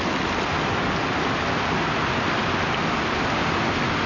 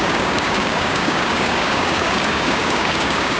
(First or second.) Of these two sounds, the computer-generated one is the second